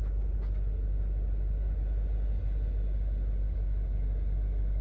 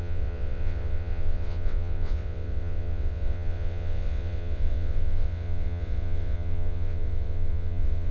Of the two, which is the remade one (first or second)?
second